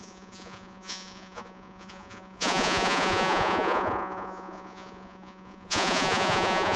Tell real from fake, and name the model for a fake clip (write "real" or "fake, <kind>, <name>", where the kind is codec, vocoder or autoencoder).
fake, vocoder, Vocos